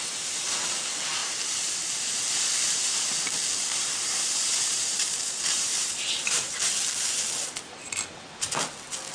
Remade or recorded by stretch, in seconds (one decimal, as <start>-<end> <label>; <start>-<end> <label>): 0.0-1.2 recorded; 1.2-2.0 remade; 2.0-3.7 recorded; 3.7-6.7 remade; 6.7-9.1 recorded